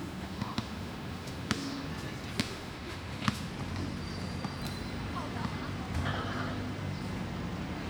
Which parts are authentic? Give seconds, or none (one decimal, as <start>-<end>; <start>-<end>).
1.9-2.4; 3.5-7.9